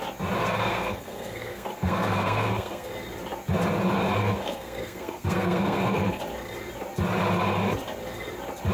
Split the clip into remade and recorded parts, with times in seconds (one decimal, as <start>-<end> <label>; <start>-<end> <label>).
0.0-0.4 recorded; 0.4-2.9 remade; 2.9-4.2 recorded; 4.2-6.2 remade; 6.2-8.7 recorded